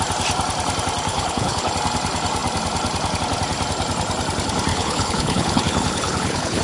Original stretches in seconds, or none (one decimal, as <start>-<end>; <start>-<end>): 0.0-1.1; 1.7-4.7